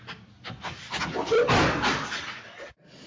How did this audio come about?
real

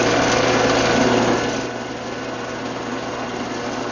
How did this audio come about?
real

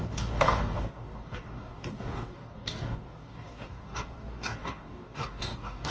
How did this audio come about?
fake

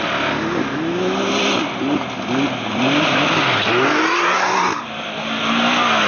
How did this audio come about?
real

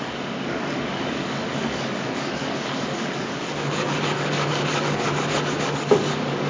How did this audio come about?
fake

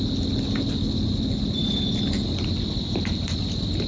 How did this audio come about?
real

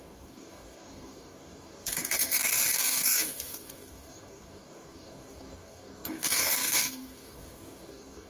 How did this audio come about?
fake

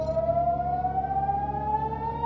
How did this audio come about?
real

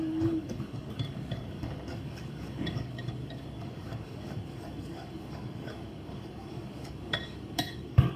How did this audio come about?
fake